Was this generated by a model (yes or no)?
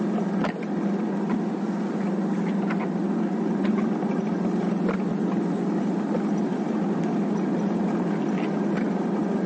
no